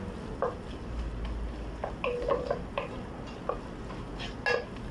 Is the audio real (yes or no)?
yes